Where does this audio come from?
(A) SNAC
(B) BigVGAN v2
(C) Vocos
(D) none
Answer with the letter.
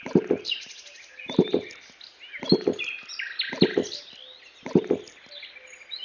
D